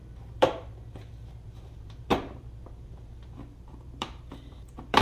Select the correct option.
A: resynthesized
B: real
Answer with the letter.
A